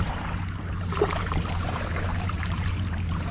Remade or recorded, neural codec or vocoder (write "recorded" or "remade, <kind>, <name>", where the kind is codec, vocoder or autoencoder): remade, vocoder, BigVGAN v2